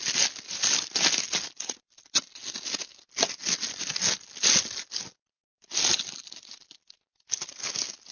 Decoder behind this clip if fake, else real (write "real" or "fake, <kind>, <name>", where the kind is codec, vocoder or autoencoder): real